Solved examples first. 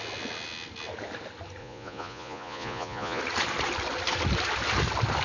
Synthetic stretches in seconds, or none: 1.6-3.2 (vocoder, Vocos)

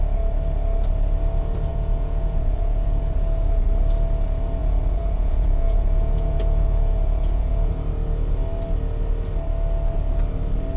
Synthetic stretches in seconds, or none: 1.7-3.0 (vocoder, Vocos); 4.6-7.7

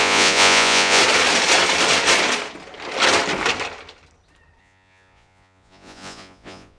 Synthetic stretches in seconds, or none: 0.0-1.0 (vocoder, Vocos); 4.6-6.8

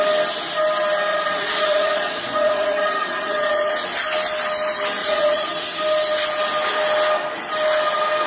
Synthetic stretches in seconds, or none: 1.1-3.7 (vocoder, Vocos); 5.0-5.5

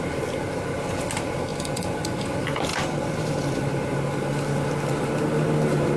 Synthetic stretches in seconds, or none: 1.5-2.3 (vocoder, Vocos)